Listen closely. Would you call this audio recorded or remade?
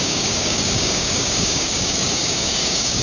remade